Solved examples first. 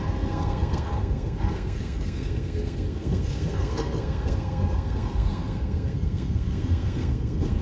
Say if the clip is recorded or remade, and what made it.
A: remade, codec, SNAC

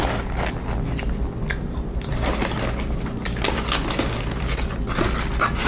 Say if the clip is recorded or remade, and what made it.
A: recorded